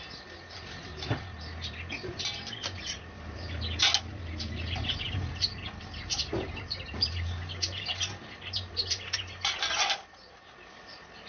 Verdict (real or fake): real